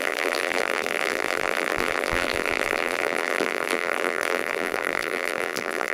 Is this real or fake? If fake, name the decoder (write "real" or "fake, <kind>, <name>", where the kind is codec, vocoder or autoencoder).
fake, vocoder, BigVGAN v2